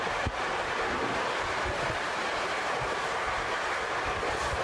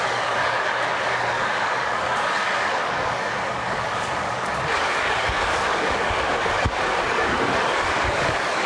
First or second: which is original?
first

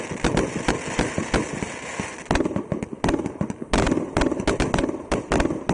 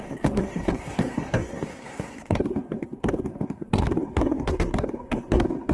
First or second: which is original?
first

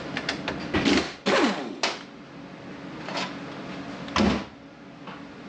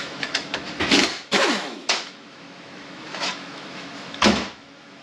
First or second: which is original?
first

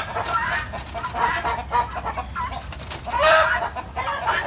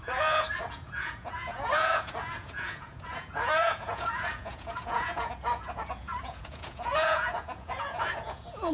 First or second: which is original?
first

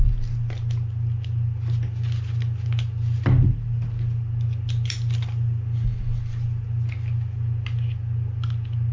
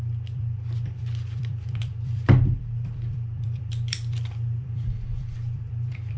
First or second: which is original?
first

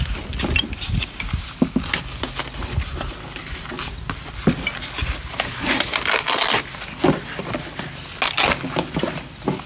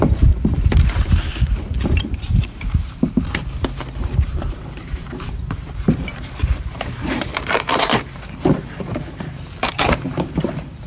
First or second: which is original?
first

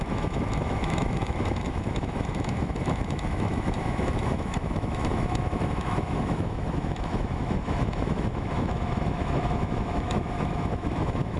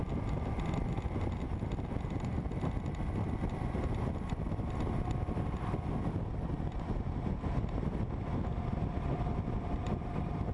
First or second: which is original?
second